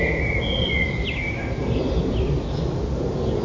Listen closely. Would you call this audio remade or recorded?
recorded